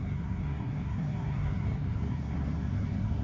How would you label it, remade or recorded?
remade